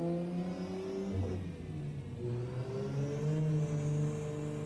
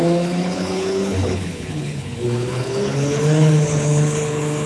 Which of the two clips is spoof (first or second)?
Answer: second